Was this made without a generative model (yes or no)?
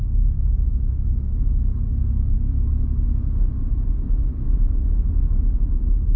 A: yes